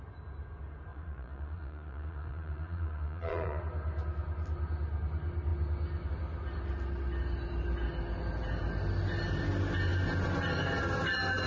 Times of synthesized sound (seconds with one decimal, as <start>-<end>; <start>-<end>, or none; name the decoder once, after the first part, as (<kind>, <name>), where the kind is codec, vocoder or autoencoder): 0.9-3.6 (vocoder, Vocos)